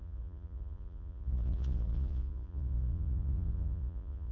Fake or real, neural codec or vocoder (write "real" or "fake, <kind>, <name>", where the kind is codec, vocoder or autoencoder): fake, vocoder, Vocos